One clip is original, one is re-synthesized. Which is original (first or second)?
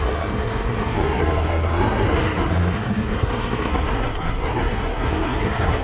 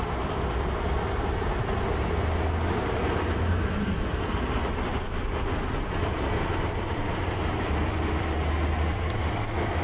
second